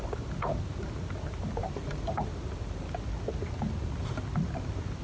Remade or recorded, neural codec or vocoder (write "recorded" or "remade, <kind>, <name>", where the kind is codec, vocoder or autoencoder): recorded